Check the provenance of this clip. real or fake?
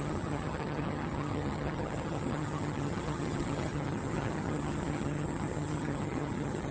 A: fake